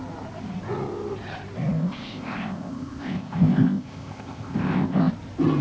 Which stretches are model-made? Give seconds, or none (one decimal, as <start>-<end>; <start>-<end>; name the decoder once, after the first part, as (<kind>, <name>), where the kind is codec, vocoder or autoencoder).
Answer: 1.7-5.1 (codec, ZipCodec)